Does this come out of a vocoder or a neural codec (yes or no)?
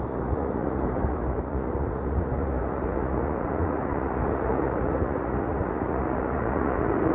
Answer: yes